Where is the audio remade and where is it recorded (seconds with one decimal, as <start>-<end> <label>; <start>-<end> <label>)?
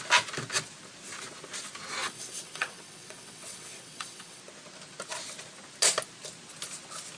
0.0-2.0 recorded; 2.0-4.4 remade; 4.4-7.2 recorded